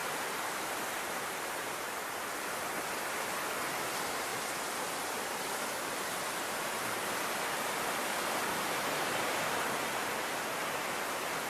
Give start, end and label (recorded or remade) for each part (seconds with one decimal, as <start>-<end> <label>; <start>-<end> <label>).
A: 0.0-4.3 recorded; 4.3-8.2 remade; 8.2-11.5 recorded